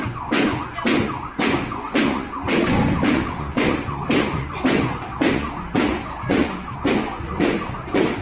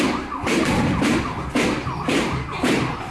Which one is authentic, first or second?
second